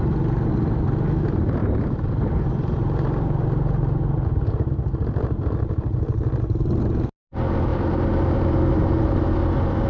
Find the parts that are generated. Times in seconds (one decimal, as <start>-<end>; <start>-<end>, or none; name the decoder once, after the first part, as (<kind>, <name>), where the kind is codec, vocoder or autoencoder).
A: 1.6-4.7 (vocoder, BigVGAN v2); 7.7-9.2